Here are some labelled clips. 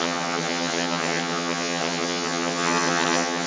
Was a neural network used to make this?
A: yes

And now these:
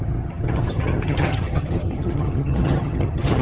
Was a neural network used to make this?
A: yes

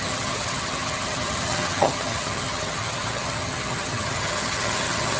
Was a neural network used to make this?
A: yes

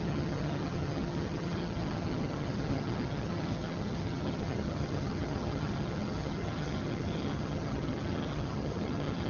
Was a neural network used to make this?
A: yes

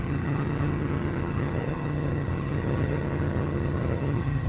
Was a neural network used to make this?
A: yes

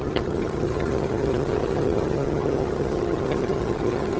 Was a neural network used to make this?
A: yes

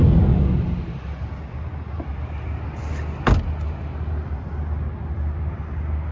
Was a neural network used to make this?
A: no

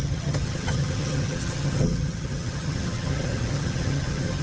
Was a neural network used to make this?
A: yes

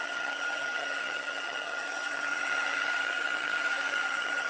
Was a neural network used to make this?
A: yes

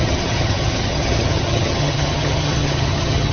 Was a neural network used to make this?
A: yes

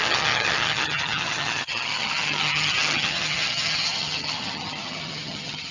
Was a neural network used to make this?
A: yes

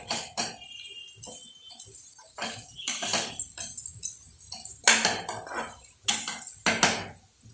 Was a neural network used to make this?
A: no